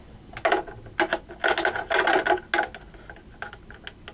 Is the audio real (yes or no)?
yes